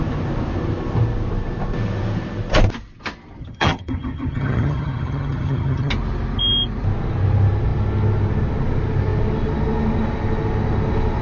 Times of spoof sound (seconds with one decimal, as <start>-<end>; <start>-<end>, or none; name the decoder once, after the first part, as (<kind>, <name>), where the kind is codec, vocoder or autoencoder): 3.4-5.9 (vocoder, HiFi-GAN)